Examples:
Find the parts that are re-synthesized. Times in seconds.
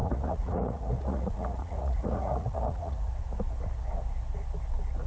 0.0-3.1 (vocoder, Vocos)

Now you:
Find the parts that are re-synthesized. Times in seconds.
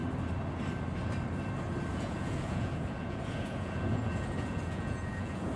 1.9-5.6 (vocoder, Vocos)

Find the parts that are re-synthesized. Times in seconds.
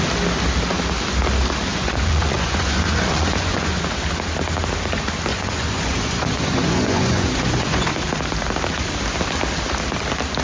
1.7-3.8 (vocoder, Vocos); 5.3-7.9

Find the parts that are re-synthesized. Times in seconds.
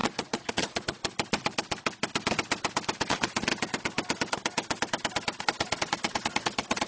0.0-1.0 (vocoder, Vocos); 3.1-3.5; 5.4-6.9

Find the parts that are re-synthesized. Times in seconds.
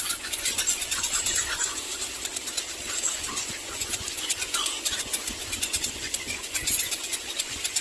0.0-1.9 (vocoder, Vocos); 2.8-7.8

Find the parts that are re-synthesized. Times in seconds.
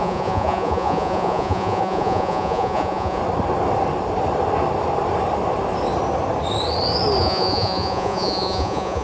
0.0-3.2 (vocoder, Vocos); 7.2-9.0